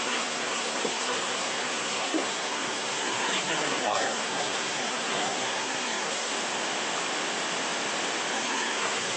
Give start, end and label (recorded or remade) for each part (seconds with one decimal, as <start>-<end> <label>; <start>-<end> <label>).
0.0-6.3 remade; 6.3-8.3 recorded; 8.3-9.2 remade